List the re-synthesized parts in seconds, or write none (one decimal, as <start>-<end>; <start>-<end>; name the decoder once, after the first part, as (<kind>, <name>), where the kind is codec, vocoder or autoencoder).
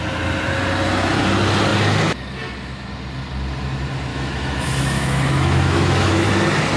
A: 4.1-6.3 (autoencoder, DAC-VAE)